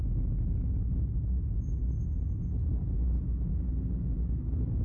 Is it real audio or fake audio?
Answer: real